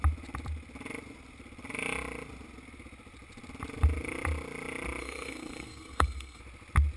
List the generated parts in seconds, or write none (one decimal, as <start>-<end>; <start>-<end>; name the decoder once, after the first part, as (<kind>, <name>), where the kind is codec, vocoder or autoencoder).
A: 5.0-6.4 (codec, SNAC)